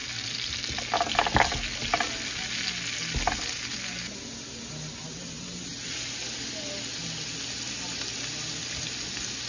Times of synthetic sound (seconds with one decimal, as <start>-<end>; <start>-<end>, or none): none